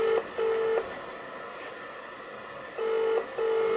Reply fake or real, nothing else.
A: real